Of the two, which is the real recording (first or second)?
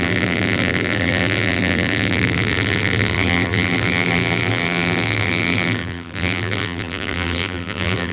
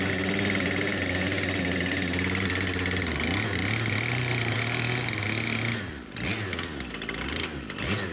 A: second